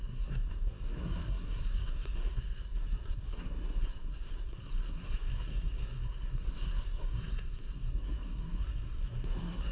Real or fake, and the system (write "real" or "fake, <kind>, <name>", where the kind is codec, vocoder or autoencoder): fake, codec, SNAC